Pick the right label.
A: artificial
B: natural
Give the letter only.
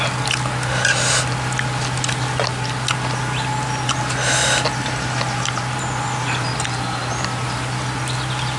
B